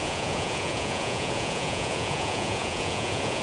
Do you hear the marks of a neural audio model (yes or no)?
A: yes